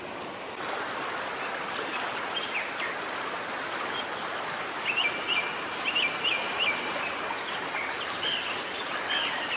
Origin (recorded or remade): recorded